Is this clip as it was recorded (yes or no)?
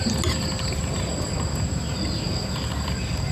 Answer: yes